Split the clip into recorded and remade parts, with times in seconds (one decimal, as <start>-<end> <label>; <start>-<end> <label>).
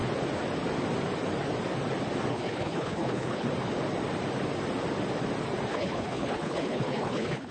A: 0.0-2.3 recorded; 2.3-3.5 remade; 3.5-5.7 recorded; 5.7-7.5 remade